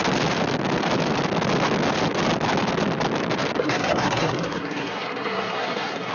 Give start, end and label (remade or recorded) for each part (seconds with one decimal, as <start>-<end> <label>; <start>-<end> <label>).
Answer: 0.0-3.6 recorded; 3.6-6.1 remade